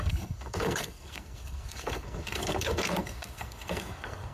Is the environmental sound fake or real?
fake